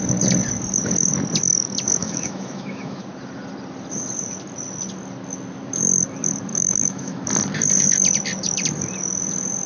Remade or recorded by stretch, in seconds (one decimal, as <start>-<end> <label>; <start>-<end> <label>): 0.0-2.0 recorded; 2.0-3.0 remade; 3.0-6.5 recorded; 6.5-7.2 remade; 7.2-9.7 recorded